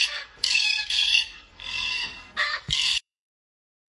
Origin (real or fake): fake